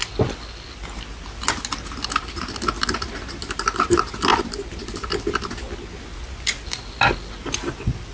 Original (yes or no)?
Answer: yes